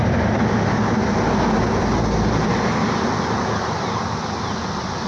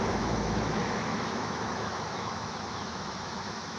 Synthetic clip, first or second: second